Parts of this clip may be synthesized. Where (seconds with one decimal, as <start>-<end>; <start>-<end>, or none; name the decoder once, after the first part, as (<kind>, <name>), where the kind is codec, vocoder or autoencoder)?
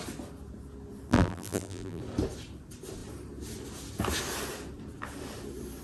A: 1.1-2.0 (vocoder, BigVGAN v2)